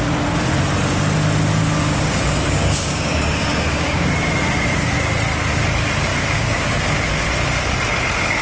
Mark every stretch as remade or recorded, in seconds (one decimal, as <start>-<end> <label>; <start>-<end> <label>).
0.0-1.8 recorded; 1.8-4.1 remade; 4.1-6.1 recorded; 6.1-7.0 remade; 7.0-8.4 recorded